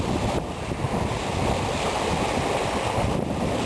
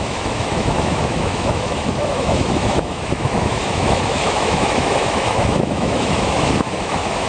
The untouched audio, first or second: first